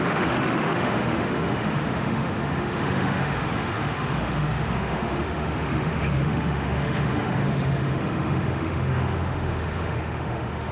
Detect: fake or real fake